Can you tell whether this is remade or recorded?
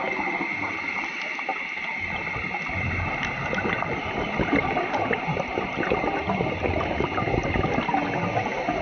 recorded